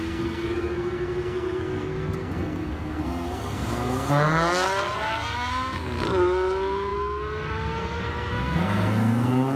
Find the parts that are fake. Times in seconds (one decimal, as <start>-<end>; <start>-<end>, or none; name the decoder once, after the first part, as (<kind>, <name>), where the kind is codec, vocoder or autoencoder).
0.0-9.6 (codec, SNAC)